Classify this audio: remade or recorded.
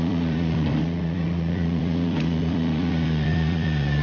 remade